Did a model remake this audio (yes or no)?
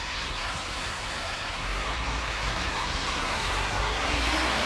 yes